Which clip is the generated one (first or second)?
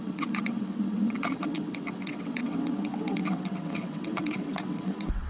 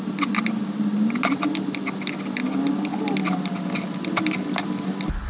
first